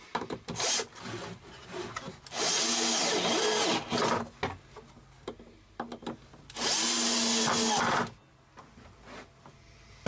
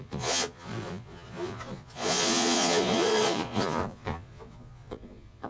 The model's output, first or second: second